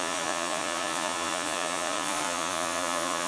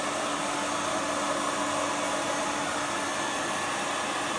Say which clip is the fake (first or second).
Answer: first